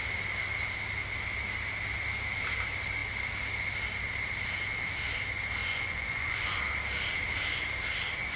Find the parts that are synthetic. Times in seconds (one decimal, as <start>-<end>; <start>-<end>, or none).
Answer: 5.6-6.6